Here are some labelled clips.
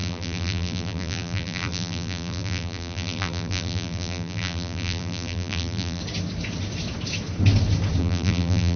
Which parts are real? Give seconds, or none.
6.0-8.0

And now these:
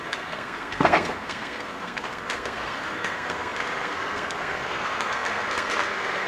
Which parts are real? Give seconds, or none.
none